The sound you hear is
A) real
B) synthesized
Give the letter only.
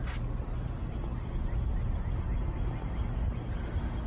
A